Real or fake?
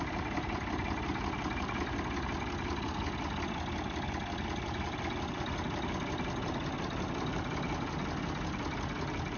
real